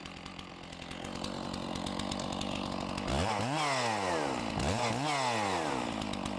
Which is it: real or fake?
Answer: real